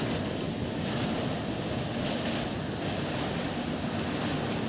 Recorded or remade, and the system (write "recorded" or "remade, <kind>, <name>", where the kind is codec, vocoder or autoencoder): recorded